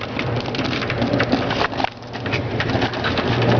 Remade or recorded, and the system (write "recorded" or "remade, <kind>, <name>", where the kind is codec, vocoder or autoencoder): remade, vocoder, BigVGAN v2